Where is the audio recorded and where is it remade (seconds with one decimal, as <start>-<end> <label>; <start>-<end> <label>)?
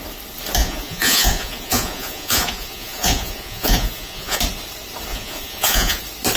0.0-0.6 recorded; 0.6-4.4 remade; 4.4-5.1 recorded; 5.1-6.0 remade; 6.0-6.4 recorded